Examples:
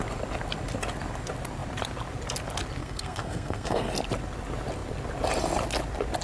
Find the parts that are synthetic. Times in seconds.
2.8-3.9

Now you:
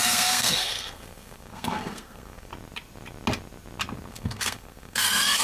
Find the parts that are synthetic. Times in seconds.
0.0-2.5; 4.1-5.4